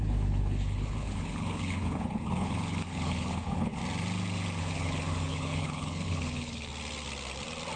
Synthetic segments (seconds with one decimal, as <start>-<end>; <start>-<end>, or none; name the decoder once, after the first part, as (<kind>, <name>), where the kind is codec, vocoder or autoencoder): 0.0-3.8 (codec, HILCodec); 4.6-6.7